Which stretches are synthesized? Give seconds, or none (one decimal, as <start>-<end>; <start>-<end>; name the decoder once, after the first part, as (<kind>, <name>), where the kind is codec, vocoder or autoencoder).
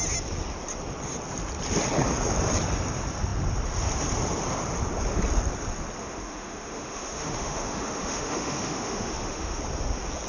6.0-9.6 (autoencoder, DAC-VAE)